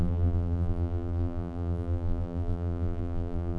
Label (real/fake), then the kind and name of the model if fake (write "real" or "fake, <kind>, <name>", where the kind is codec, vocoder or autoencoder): fake, vocoder, BigVGAN v2